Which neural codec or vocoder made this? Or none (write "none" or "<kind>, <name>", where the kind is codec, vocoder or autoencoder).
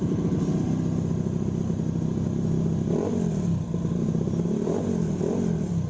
none